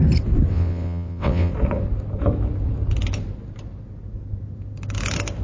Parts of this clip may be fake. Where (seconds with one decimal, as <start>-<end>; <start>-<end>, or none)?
0.5-1.5